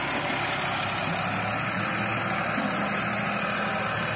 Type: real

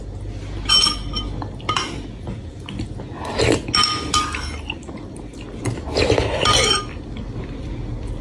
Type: real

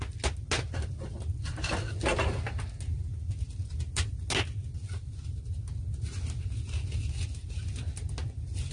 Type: real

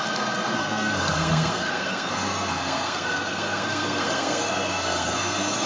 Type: fake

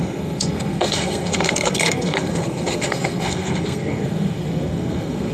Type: fake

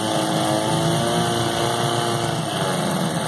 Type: real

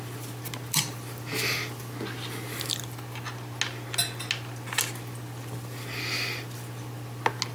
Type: real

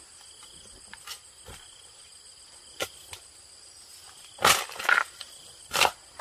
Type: real